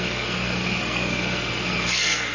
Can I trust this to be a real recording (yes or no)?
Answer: no